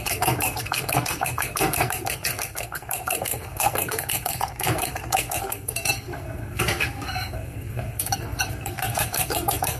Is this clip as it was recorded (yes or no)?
no